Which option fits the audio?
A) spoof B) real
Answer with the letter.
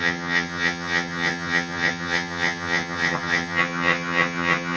A